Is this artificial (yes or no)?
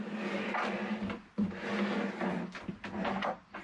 no